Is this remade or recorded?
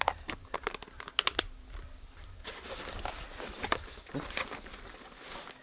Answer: recorded